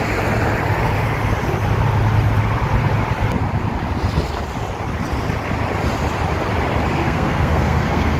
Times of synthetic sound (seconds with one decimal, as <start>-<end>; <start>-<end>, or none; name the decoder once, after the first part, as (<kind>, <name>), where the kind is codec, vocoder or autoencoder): 7.0-8.2 (codec, SNAC)